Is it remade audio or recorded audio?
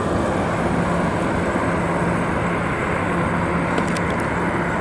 recorded